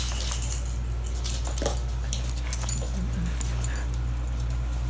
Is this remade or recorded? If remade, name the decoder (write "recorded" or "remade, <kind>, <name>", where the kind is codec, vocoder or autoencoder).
recorded